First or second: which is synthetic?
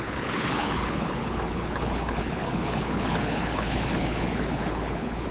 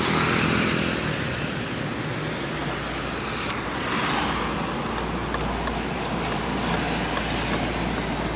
first